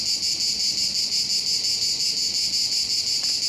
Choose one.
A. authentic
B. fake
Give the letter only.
A